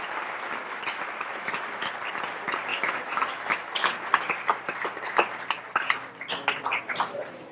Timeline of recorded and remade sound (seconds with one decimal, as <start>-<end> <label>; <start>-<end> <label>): 0.0-2.7 recorded; 2.7-3.9 remade; 3.9-7.5 recorded